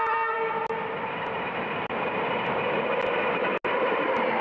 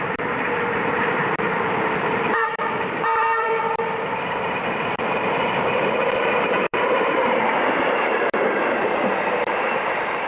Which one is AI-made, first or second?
second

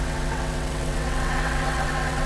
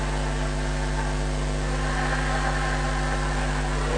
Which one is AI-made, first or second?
first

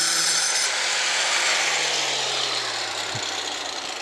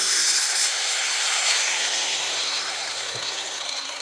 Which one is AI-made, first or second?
second